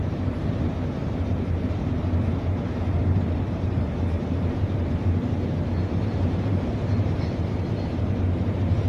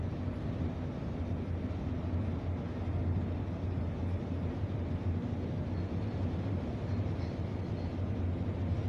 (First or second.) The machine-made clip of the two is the first